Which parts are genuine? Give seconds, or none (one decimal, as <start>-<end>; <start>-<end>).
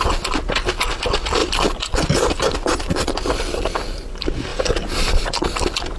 0.0-1.4; 4.1-4.5; 5.1-6.0